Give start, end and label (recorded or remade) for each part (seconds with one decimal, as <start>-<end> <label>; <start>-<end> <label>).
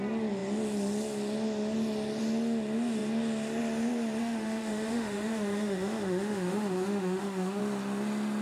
0.0-4.2 recorded; 4.2-7.6 remade; 7.6-8.4 recorded